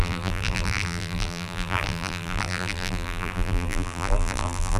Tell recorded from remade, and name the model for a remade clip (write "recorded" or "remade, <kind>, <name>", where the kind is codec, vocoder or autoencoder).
remade, vocoder, BigVGAN v2